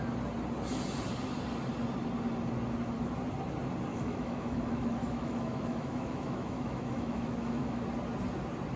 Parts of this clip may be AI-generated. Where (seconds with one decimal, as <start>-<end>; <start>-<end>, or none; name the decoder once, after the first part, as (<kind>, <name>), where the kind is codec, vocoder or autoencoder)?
3.9-7.8 (autoencoder, DAC-VAE)